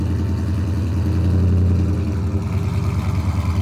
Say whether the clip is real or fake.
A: real